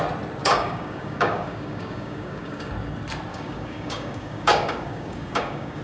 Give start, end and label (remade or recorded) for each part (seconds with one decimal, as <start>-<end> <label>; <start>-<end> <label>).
0.0-0.4 recorded; 0.4-2.7 remade; 2.7-3.3 recorded; 3.3-5.8 remade